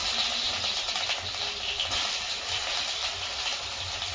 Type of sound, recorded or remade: recorded